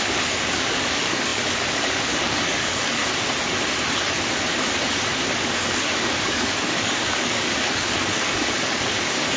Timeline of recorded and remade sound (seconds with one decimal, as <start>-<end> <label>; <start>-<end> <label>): 0.0-3.0 remade; 3.0-5.4 recorded; 5.4-9.4 remade